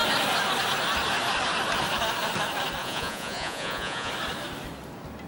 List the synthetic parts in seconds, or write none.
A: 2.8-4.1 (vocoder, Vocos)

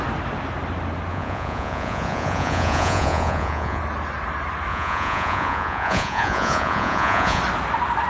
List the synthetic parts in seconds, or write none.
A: 1.1-3.8 (vocoder, Vocos); 4.7-7.4